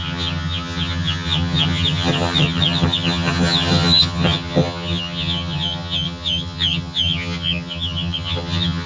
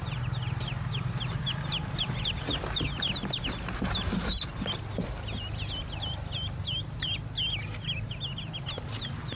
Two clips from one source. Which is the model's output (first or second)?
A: first